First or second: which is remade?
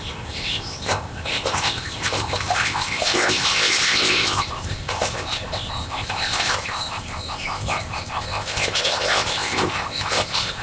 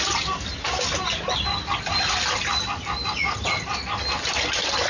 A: first